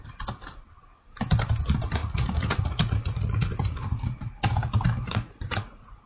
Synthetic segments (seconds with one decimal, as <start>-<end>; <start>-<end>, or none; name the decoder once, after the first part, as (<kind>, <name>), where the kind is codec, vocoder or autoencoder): 2.0-6.1 (vocoder, Vocos)